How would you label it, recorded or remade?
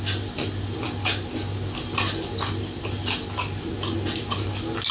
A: recorded